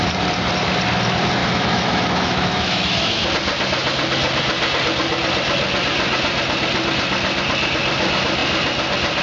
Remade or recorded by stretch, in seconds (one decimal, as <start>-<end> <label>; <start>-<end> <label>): 0.0-1.4 recorded; 1.4-3.3 remade; 3.3-9.2 recorded